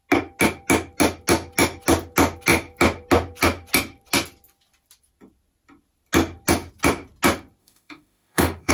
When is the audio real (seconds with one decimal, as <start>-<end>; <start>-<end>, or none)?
0.0-7.6